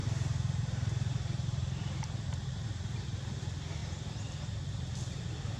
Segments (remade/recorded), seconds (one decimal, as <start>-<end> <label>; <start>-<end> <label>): 0.0-3.4 remade; 3.4-5.6 recorded